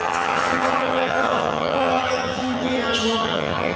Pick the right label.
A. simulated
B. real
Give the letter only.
A